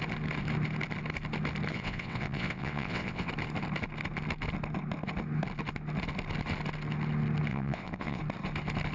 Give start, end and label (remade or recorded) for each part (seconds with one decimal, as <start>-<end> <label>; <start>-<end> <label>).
0.0-1.7 recorded; 1.7-3.3 remade; 3.3-7.5 recorded; 7.5-8.2 remade; 8.2-8.9 recorded